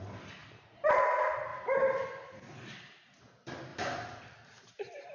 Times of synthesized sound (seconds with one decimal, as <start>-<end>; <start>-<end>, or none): 0.4-0.9; 1.5-3.2; 3.7-4.2